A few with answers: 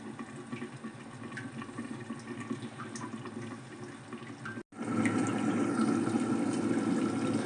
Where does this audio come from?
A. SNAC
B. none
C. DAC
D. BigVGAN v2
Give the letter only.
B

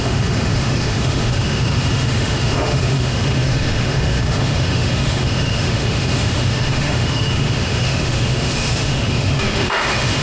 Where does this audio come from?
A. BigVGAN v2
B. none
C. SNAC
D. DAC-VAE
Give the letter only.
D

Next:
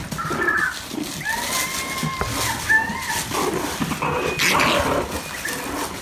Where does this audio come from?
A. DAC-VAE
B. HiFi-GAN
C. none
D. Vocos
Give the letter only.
C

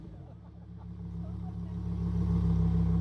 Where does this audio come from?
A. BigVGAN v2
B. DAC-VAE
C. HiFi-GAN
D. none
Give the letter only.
D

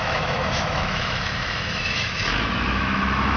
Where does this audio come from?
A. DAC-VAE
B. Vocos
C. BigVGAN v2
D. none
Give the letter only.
A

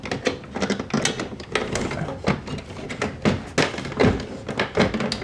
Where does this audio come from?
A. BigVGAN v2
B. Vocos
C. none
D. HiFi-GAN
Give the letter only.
C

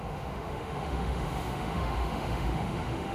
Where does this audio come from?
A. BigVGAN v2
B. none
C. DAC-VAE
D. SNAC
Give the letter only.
C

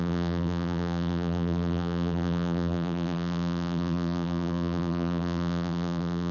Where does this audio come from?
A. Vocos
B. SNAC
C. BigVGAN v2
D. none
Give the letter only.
C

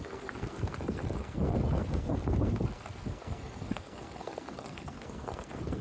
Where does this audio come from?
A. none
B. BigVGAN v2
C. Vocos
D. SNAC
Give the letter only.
D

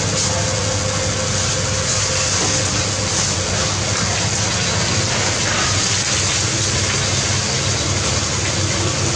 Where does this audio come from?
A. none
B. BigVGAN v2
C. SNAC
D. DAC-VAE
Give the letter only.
A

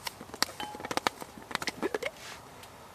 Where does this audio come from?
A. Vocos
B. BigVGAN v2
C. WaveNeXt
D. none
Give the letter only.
D